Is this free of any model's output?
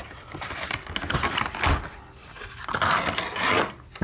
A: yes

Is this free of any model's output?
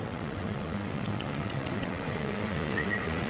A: no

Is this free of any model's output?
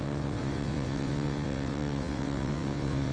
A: no